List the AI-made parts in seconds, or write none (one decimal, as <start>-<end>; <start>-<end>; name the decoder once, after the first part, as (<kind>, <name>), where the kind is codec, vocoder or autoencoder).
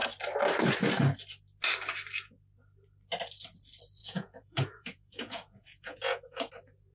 4.0-6.5 (vocoder, Vocos)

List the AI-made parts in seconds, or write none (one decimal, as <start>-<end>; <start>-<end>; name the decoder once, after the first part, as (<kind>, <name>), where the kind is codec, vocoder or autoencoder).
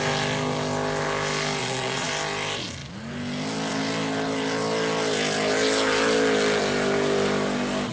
1.6-2.1 (vocoder, Vocos)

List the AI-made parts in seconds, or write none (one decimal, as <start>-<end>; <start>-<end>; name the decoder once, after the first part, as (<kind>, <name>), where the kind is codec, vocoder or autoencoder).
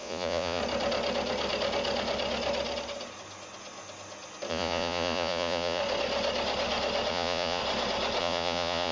0.0-0.6 (vocoder, Vocos); 4.5-5.8; 7.1-7.6; 8.2-8.9